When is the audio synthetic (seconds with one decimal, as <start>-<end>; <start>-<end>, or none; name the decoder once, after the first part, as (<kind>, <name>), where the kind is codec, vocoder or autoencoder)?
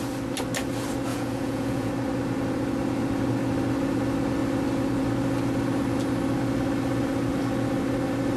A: 1.1-1.9 (vocoder, Vocos)